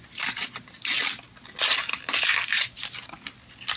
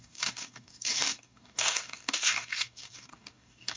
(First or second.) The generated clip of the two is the second